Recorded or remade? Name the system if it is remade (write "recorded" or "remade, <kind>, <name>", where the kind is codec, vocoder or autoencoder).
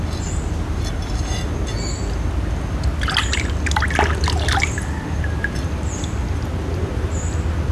recorded